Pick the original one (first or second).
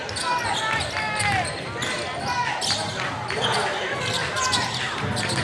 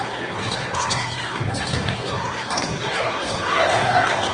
first